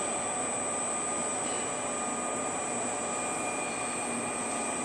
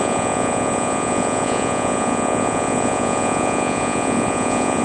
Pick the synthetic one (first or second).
second